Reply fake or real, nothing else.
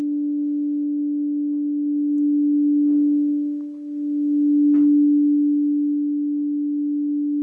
real